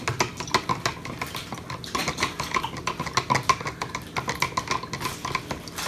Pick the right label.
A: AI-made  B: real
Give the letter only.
B